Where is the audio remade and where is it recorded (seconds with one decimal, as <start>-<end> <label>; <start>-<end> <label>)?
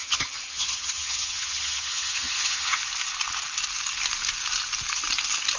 0.0-2.8 remade; 2.8-5.6 recorded